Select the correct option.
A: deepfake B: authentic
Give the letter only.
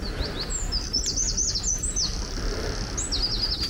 B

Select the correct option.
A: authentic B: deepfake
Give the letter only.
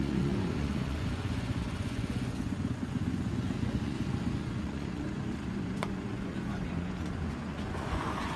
B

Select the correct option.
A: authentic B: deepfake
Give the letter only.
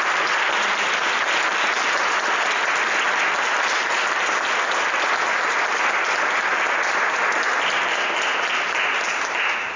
A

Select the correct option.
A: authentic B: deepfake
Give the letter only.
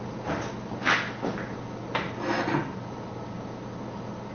A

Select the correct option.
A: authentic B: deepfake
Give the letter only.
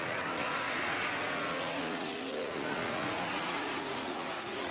B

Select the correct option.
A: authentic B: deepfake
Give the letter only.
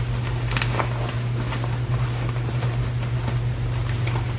A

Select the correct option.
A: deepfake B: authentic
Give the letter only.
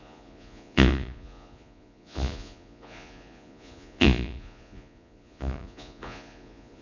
A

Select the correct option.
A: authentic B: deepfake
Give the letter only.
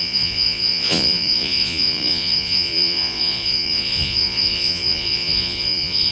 B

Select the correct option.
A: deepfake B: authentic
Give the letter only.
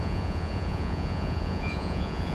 A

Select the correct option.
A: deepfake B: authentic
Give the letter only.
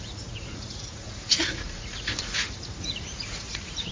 A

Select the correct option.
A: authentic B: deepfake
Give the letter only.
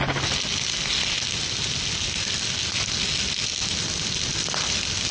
A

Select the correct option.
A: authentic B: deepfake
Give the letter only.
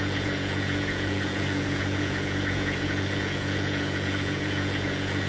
B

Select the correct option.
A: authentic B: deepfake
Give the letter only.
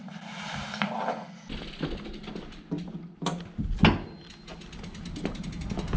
A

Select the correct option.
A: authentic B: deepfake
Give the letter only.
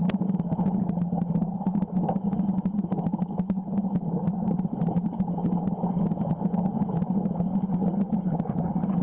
A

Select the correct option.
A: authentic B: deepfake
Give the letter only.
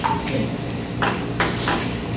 A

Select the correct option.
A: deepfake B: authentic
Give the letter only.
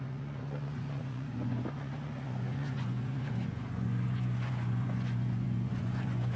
A